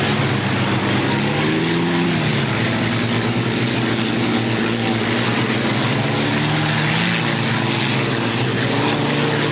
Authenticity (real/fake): real